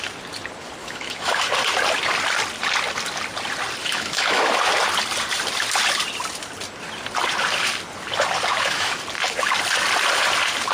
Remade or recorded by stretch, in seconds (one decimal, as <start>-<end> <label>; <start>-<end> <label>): 0.0-0.8 recorded; 0.8-1.5 remade; 1.5-3.8 recorded; 3.8-4.4 remade; 4.4-8.5 recorded; 8.5-9.0 remade; 9.0-10.7 recorded